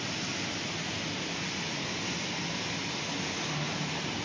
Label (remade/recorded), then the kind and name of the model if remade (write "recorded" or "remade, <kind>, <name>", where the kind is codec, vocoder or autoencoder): recorded